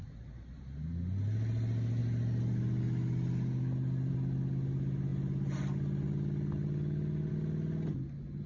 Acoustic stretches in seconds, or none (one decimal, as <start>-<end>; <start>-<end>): 0.0-8.5